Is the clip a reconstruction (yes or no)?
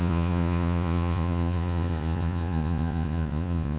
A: yes